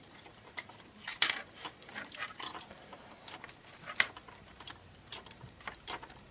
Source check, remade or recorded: remade